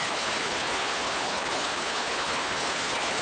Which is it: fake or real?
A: fake